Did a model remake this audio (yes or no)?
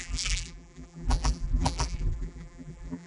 yes